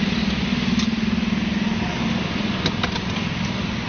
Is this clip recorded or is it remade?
recorded